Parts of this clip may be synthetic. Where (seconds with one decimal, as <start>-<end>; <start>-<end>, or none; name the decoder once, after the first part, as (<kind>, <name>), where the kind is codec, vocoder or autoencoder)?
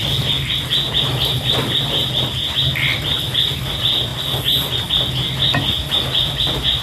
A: none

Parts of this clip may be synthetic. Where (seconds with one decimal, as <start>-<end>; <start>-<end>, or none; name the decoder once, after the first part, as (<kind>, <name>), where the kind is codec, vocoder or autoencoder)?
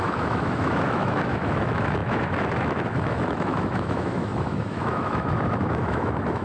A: 0.0-6.4 (autoencoder, DAC-VAE)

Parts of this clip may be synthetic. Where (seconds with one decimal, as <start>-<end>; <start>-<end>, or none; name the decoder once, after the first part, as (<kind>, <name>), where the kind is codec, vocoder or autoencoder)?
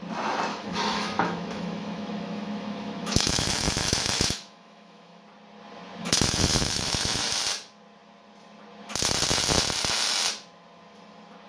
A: 0.5-5.2 (autoencoder, DAC-VAE); 6.0-7.4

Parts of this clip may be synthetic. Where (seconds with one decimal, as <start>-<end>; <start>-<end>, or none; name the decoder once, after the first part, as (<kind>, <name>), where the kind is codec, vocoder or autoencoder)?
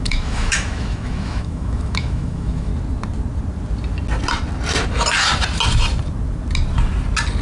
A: 0.0-2.7 (autoencoder, DAC-VAE)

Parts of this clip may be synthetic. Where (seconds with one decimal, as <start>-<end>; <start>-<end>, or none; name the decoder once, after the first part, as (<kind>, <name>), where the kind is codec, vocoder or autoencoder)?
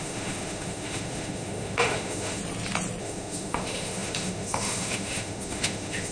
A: 0.0-2.4 (autoencoder, DAC-VAE); 3.0-6.1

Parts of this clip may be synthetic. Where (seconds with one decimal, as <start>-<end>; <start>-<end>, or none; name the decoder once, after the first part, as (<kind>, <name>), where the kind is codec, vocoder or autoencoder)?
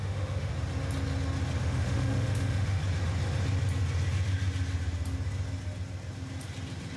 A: 0.0-0.5 (autoencoder, DAC-VAE); 1.6-2.8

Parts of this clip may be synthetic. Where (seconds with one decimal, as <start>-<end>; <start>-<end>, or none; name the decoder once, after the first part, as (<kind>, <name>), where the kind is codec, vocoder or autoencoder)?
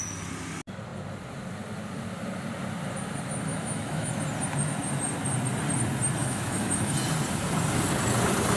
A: 3.5-4.1 (autoencoder, DAC-VAE); 6.2-6.9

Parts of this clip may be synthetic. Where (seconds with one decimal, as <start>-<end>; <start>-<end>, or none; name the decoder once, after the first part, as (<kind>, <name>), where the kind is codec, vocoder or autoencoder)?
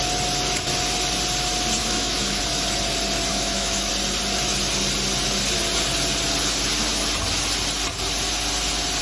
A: 1.8-2.4 (autoencoder, DAC-VAE); 3.3-3.9